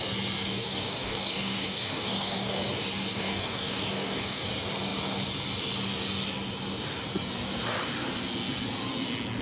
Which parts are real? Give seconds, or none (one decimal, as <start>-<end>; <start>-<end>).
0.0-0.5; 2.5-3.1; 4.5-9.4